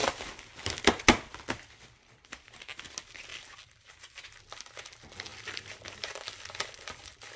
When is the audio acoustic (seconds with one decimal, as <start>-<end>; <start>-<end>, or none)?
0.0-3.3; 3.9-5.3; 6.0-7.4